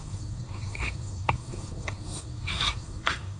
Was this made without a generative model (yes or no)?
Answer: no